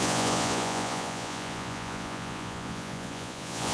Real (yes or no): no